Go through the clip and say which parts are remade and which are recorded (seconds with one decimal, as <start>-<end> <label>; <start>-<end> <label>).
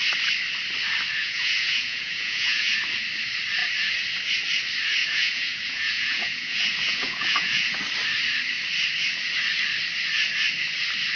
0.0-1.2 recorded; 1.2-2.8 remade; 2.8-5.0 recorded; 5.0-7.8 remade; 7.8-11.2 recorded